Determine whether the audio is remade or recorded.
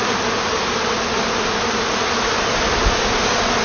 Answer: recorded